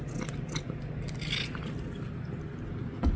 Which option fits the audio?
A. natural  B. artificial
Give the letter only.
A